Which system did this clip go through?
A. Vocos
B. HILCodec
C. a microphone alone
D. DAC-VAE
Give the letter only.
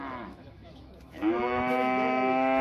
D